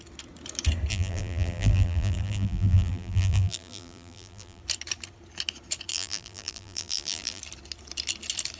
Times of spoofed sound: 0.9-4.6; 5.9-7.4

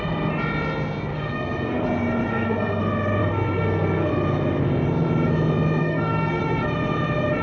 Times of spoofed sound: 1.1-1.8; 2.3-2.8; 3.2-4.1; 5.8-6.4

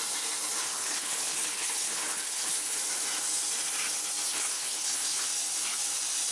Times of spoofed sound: 0.6-2.8; 4.3-5.3

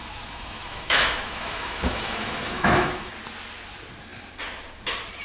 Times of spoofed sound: 0.0-3.1

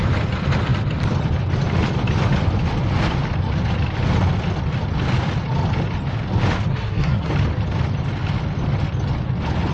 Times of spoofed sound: 6.7-7.3

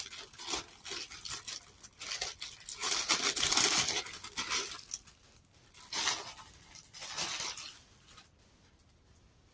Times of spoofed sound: none

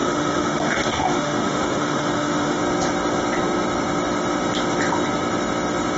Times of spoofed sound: 0.0-2.6